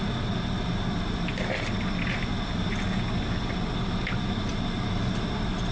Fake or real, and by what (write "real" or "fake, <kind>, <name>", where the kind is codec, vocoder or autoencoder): real